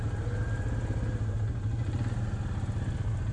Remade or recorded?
recorded